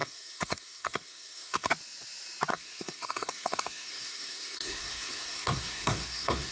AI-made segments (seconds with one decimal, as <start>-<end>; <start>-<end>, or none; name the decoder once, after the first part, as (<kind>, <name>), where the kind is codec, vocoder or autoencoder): 0.0-1.7 (codec, SNAC); 2.5-6.5